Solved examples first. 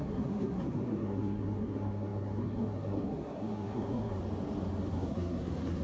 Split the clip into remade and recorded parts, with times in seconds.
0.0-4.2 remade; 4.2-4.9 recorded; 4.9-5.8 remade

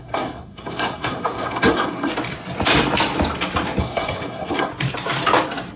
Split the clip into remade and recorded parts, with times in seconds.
0.0-2.1 remade; 2.1-3.8 recorded; 3.8-4.7 remade; 4.7-5.8 recorded

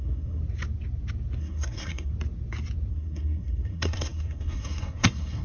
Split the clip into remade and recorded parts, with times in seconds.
0.0-0.4 remade; 0.4-1.4 recorded; 1.4-2.1 remade; 2.1-2.9 recorded; 2.9-5.4 remade

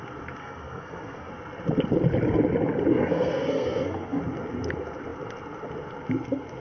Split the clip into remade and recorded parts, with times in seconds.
0.0-0.4 recorded; 0.4-1.3 remade; 1.3-2.9 recorded; 2.9-4.2 remade; 4.2-6.6 recorded

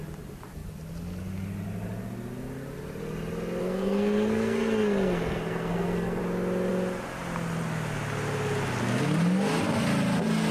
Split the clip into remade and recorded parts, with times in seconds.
0.0-3.6 recorded; 3.6-6.2 remade; 6.2-10.5 recorded